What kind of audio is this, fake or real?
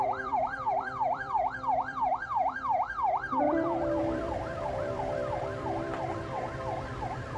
fake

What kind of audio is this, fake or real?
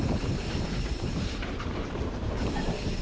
fake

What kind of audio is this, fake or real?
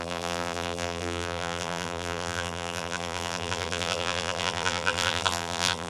fake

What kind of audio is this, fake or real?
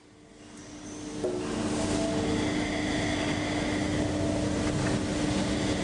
real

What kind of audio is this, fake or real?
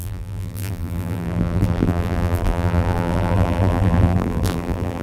fake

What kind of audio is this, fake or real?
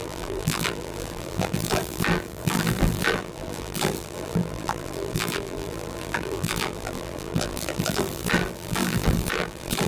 fake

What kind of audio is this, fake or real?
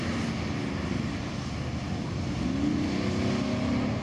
real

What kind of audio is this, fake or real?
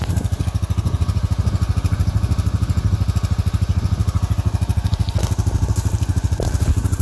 real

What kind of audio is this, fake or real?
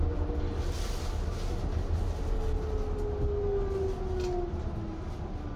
real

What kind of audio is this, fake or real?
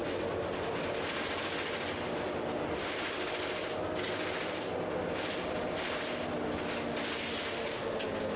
real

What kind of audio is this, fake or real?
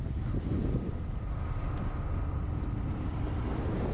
real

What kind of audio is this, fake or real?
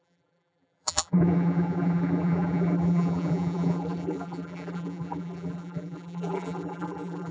fake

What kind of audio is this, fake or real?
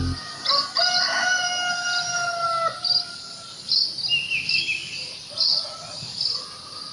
real